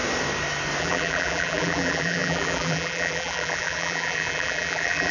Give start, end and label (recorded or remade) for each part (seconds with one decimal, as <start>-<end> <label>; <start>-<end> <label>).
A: 0.0-0.8 recorded; 0.8-5.1 remade